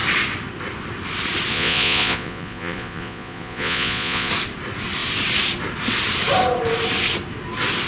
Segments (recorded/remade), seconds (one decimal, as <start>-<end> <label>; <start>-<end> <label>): 0.0-1.5 recorded; 1.5-4.3 remade; 4.3-7.9 recorded